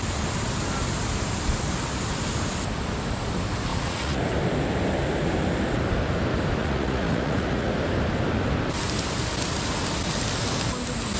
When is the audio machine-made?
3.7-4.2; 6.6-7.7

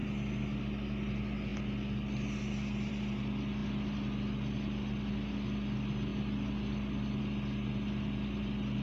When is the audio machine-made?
none

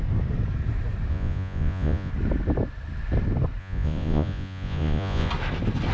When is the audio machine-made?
1.1-2.1; 3.6-5.3

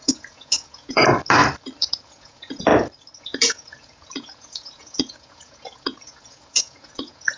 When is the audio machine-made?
0.0-1.0; 1.8-2.7; 3.2-7.4

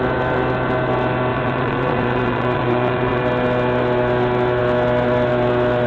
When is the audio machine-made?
1.3-3.2

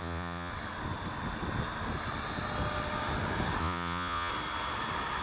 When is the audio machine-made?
0.0-0.5; 3.6-4.3

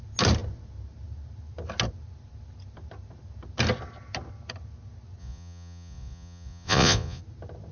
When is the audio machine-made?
5.2-7.2

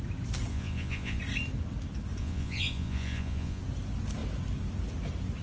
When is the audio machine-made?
0.5-1.2; 2.2-3.6